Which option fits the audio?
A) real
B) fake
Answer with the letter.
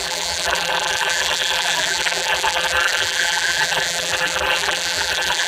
B